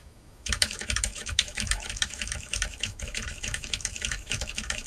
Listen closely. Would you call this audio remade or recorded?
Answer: remade